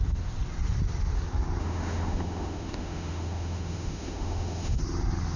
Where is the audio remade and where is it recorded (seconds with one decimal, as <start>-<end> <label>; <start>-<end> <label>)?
0.0-1.6 recorded; 1.6-4.8 remade; 4.8-5.4 recorded